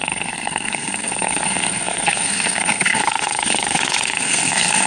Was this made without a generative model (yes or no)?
no